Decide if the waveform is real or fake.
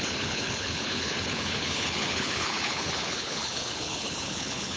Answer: fake